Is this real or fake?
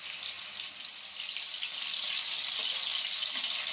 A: real